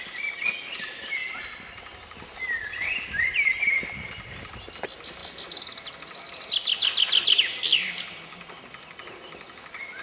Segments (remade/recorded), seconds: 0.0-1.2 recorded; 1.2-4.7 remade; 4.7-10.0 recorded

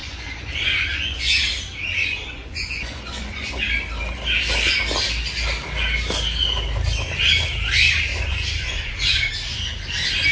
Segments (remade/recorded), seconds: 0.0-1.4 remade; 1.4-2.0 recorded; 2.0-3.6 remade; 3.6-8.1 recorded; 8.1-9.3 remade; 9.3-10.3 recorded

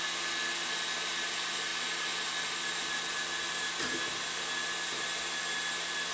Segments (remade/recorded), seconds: 0.0-6.1 recorded